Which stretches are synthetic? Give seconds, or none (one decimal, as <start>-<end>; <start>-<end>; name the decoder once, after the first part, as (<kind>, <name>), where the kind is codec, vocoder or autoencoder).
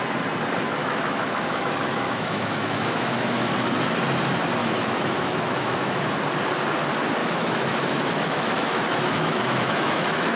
0.8-3.5 (autoencoder, DAC-VAE); 4.6-6.0; 7.2-10.4